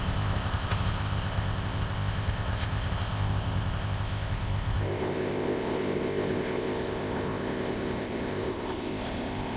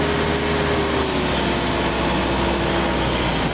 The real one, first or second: second